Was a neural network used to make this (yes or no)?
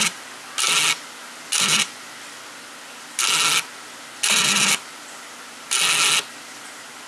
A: no